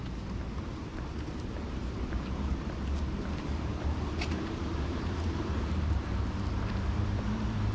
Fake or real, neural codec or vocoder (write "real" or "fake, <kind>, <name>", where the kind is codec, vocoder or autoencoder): fake, vocoder, BigVGAN v2